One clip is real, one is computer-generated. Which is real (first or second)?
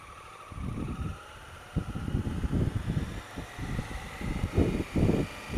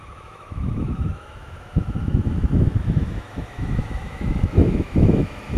first